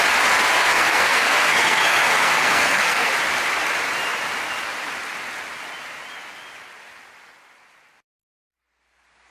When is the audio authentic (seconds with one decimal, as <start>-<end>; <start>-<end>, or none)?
0.0-0.6; 3.1-9.3